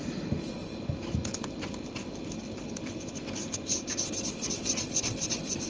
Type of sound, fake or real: real